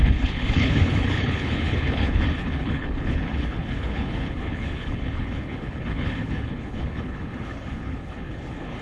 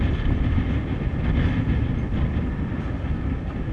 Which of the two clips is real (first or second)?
second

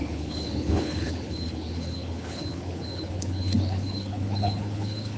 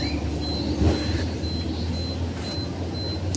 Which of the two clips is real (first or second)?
second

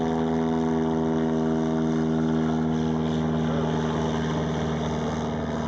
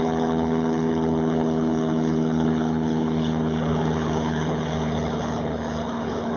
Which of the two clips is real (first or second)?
first